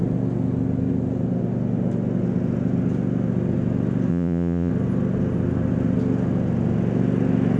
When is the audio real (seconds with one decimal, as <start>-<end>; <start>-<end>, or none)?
0.0-4.1; 4.7-7.6